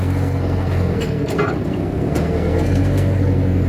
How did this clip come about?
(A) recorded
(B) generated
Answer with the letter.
B